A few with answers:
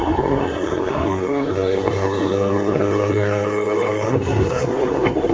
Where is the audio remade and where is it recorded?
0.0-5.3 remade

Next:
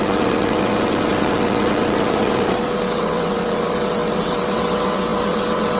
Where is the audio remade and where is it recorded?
0.0-5.8 remade

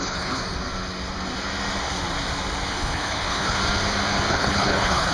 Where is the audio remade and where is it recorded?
0.0-0.4 remade; 0.4-2.7 recorded; 2.7-3.6 remade; 3.6-4.3 recorded; 4.3-5.1 remade

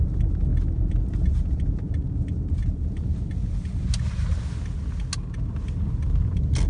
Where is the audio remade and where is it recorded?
0.0-6.7 recorded